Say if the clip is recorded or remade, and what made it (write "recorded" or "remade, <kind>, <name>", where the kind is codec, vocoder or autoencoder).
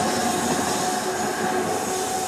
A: recorded